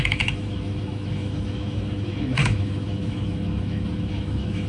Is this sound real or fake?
fake